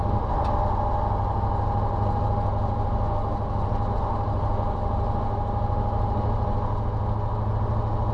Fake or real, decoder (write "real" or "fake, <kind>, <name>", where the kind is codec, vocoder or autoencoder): real